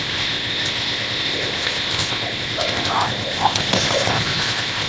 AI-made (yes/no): yes